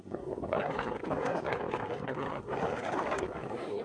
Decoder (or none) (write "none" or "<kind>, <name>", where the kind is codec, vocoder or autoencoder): codec, SNAC